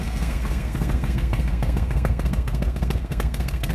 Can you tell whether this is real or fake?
fake